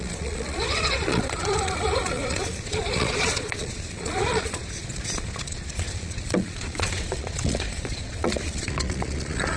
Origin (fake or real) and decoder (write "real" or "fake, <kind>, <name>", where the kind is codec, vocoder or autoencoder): fake, vocoder, Vocos